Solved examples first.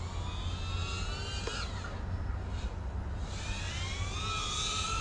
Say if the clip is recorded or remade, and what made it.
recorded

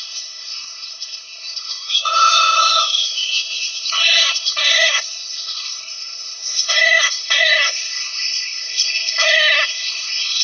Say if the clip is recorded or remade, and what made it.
remade, codec, SNAC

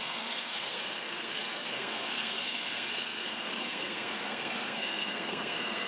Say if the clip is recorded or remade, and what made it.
remade, codec, SNAC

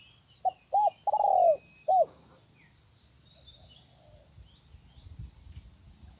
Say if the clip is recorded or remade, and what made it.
recorded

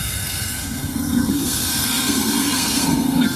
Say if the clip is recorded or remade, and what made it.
remade, codec, SNAC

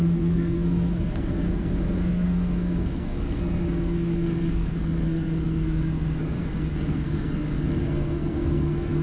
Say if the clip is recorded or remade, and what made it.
remade, codec, SNAC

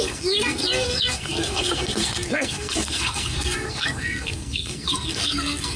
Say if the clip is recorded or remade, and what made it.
remade, codec, SNAC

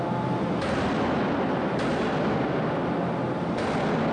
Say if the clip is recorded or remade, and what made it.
recorded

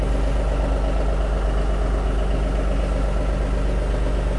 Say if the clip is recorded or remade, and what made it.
recorded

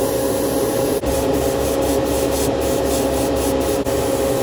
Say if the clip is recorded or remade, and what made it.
recorded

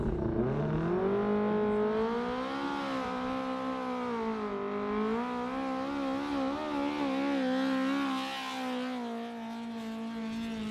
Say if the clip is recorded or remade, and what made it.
recorded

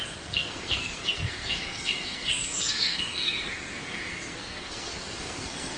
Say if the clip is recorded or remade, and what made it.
remade, codec, SNAC